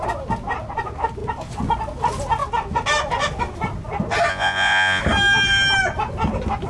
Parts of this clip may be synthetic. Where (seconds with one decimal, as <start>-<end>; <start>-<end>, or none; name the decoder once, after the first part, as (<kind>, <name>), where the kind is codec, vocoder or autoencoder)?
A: 4.3-5.0 (vocoder, Vocos)